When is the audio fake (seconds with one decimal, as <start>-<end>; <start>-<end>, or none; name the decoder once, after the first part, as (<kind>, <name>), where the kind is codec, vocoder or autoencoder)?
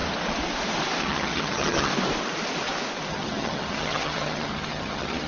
1.0-1.9 (vocoder, HiFi-GAN); 3.1-5.3